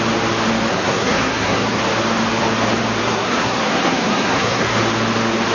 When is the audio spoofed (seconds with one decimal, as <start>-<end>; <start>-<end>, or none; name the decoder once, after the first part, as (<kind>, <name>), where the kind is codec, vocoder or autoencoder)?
0.7-1.8 (codec, SNAC); 3.0-4.7